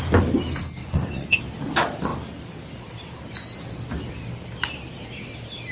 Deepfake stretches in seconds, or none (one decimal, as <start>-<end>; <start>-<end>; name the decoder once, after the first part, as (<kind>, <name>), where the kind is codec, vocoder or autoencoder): 0.8-1.4 (vocoder, Vocos)